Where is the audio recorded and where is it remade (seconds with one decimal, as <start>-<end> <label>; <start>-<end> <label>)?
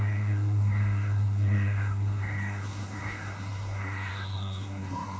0.0-5.2 remade